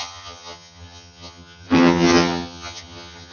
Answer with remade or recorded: remade